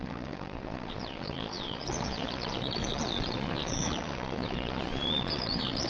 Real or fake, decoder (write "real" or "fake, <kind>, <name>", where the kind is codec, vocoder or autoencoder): fake, vocoder, Vocos